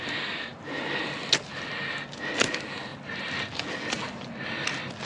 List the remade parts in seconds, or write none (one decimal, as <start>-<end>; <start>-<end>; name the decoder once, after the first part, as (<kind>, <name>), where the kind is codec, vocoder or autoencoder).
none